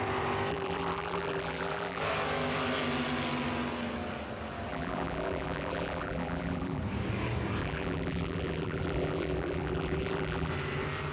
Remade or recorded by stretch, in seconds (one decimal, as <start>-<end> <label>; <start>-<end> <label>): 0.0-0.5 recorded; 0.5-2.0 remade; 2.0-4.7 recorded; 4.7-6.8 remade; 6.8-7.6 recorded; 7.6-10.5 remade; 10.5-11.1 recorded